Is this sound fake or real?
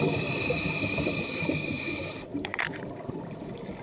fake